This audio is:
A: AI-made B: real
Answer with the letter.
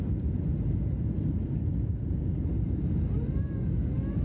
B